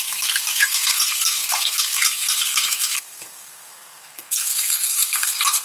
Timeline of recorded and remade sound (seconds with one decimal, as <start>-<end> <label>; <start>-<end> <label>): 0.0-5.6 remade

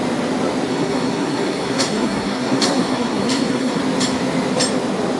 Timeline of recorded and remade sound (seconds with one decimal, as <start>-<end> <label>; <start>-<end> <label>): 0.0-0.7 recorded; 0.7-3.8 remade; 3.8-5.2 recorded

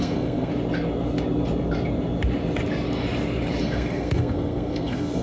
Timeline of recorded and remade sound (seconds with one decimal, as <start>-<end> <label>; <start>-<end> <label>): 0.0-0.5 remade; 0.5-3.6 recorded; 3.6-5.2 remade